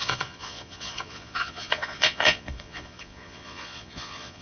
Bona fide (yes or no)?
no